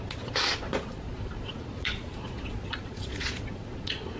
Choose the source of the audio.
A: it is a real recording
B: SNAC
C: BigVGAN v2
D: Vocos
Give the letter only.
D